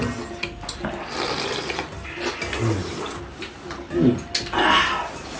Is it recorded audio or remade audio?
recorded